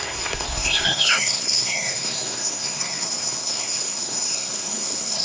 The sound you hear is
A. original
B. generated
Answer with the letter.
B